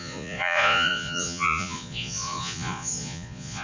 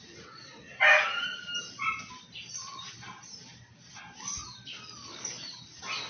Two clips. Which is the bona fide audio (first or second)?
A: second